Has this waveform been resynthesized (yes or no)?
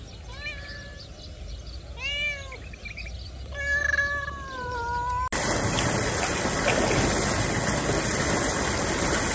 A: no